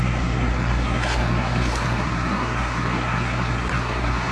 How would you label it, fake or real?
fake